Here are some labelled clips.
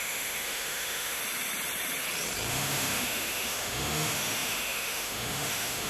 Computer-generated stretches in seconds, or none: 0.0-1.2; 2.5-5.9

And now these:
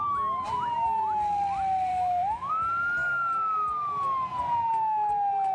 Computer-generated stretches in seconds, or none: 1.9-2.5